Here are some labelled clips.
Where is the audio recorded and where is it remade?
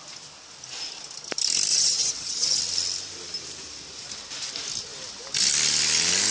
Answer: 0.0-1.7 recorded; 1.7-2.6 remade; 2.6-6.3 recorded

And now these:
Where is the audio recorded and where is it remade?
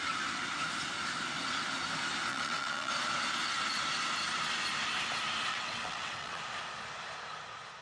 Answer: 0.0-2.3 recorded; 2.3-2.9 remade; 2.9-5.5 recorded; 5.5-6.4 remade; 6.4-7.8 recorded